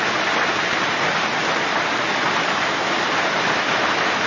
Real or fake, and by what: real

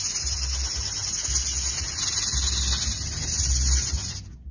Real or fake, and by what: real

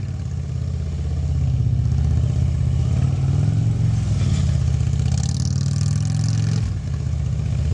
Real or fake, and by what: real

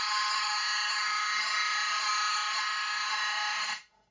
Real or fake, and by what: fake, autoencoder, DAC-VAE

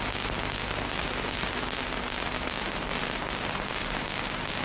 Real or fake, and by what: real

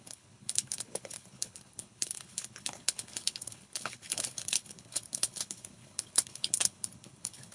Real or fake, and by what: fake, codec, HILCodec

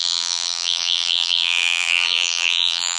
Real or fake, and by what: fake, vocoder, BigVGAN v2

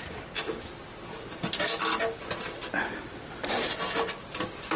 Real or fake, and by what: real